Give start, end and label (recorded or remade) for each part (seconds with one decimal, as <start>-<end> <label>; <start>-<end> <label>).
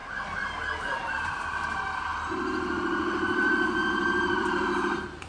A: 0.0-0.8 recorded; 0.8-5.3 remade